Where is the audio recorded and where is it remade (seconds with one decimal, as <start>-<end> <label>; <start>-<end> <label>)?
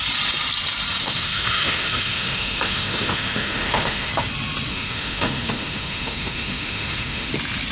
0.0-1.0 recorded; 1.0-4.1 remade; 4.1-4.7 recorded; 4.7-7.3 remade; 7.3-7.7 recorded